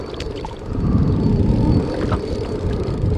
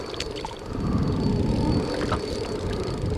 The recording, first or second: second